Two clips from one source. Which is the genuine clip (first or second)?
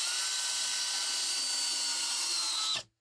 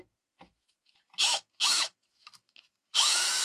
first